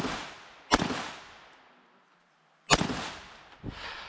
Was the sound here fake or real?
real